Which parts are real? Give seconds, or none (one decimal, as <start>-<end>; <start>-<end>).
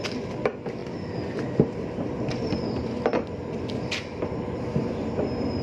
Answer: 0.0-5.6